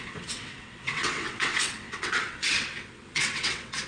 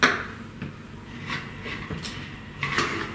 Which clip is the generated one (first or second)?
first